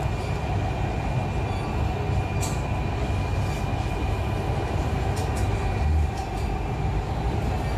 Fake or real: real